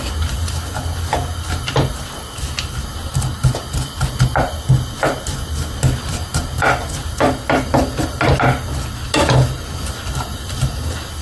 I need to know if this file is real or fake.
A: real